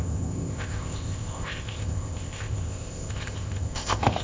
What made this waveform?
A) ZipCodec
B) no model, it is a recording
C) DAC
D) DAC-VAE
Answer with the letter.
A